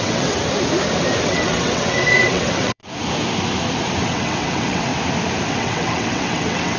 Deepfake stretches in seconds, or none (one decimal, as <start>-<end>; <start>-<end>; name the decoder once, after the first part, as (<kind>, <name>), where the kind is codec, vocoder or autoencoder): 0.0-0.4 (vocoder, WaveNeXt); 1.2-2.8; 4.0-4.9; 5.5-6.8